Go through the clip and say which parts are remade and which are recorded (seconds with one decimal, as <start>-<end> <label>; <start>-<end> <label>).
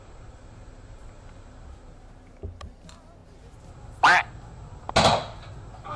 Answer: 0.0-6.0 recorded